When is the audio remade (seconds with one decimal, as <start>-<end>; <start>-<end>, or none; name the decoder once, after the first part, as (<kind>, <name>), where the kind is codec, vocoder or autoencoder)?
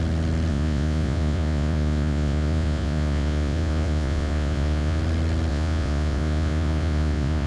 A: 0.5-5.0 (vocoder, Vocos); 5.5-7.5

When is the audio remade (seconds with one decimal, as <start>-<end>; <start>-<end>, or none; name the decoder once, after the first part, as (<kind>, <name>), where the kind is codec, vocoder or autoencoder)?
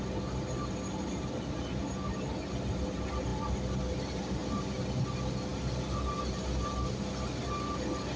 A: none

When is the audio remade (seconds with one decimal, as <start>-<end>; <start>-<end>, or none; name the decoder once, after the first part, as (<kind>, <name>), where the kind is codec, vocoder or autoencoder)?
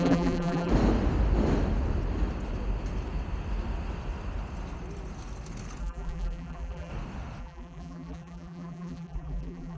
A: 0.0-0.7 (vocoder, BigVGAN v2); 5.8-6.9; 7.4-9.8